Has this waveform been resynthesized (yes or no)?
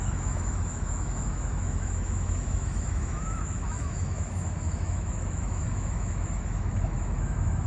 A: yes